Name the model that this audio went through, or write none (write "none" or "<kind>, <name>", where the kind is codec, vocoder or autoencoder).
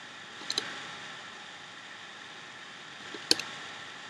none